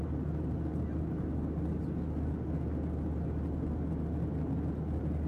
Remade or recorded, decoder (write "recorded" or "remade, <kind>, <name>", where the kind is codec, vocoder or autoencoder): recorded